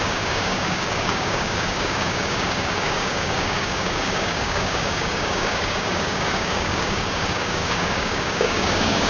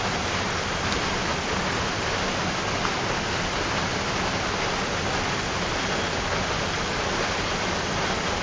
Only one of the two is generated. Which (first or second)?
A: first